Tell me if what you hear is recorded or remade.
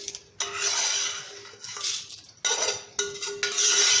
recorded